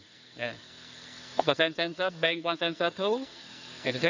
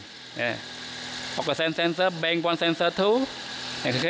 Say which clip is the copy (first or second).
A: first